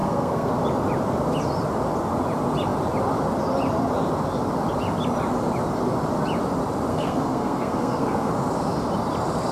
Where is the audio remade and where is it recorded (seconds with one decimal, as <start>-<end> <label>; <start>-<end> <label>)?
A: 0.0-0.5 remade; 0.5-6.9 recorded; 6.9-8.3 remade; 8.3-9.5 recorded